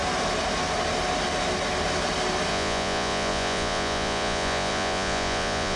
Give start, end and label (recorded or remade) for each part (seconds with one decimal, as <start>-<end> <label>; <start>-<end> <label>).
0.0-2.5 recorded; 2.5-5.8 remade